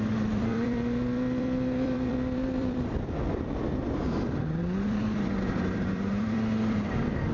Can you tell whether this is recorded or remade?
remade